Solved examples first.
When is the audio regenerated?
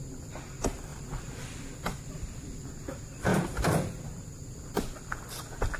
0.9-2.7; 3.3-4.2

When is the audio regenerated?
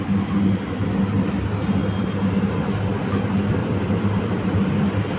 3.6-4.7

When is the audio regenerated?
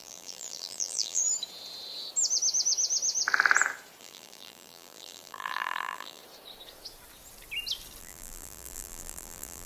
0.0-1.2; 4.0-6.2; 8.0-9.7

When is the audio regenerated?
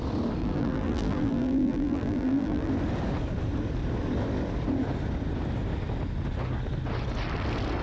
0.4-2.7